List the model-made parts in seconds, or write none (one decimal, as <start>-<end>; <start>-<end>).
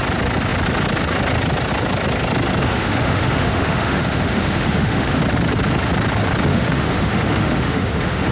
2.6-5.2; 6.5-8.3